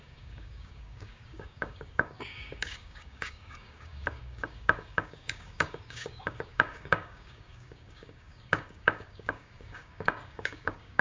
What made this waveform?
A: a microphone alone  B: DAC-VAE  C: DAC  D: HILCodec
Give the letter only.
C